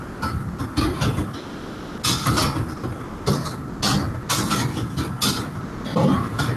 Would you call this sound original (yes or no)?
yes